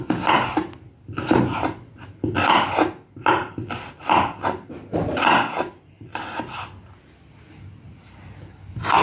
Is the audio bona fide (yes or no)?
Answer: yes